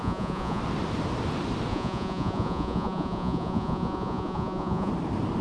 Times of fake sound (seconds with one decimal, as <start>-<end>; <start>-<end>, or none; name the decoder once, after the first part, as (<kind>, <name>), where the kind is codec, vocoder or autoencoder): 0.0-0.6 (vocoder, Vocos); 1.7-4.9